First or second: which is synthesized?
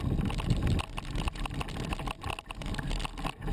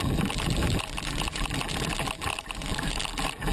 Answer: second